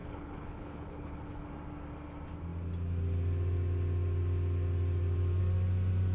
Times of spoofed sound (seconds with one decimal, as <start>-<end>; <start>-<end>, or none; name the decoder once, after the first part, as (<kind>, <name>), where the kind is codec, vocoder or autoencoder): 0.0-1.5 (codec, HILCodec)